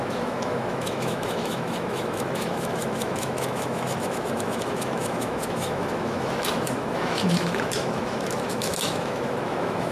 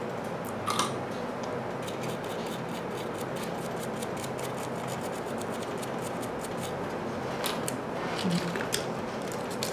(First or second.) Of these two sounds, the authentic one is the second